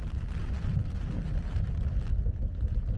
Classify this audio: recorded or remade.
recorded